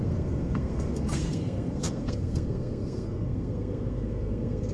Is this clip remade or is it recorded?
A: remade